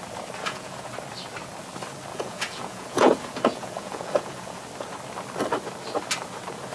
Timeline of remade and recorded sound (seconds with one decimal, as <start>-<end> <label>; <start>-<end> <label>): 0.0-0.4 recorded; 0.4-0.9 remade; 0.9-2.1 recorded; 2.1-4.6 remade; 4.6-6.7 recorded